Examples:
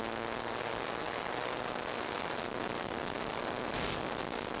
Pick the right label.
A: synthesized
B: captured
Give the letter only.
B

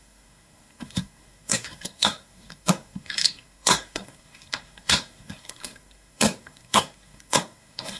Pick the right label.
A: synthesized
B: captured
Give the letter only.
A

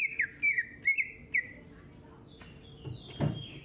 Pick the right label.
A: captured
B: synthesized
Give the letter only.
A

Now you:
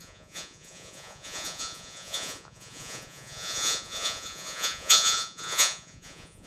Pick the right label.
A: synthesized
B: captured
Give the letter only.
A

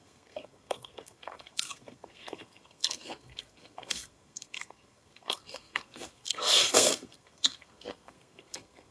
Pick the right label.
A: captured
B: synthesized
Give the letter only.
B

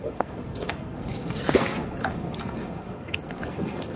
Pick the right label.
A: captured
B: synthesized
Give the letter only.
B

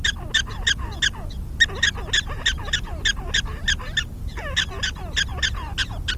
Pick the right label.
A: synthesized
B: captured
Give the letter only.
B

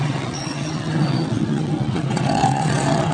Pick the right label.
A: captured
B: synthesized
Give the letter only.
B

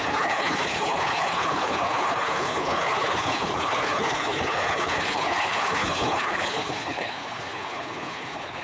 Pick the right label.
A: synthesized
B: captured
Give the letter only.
A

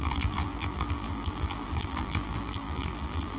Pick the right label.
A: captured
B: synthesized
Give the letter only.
B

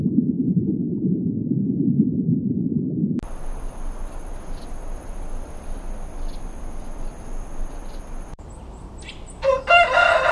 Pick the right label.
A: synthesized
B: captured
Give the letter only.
B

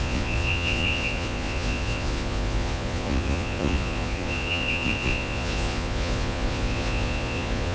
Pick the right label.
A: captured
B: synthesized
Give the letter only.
B